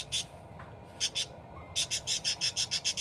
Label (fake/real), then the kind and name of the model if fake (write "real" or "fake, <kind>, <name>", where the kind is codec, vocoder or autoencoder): real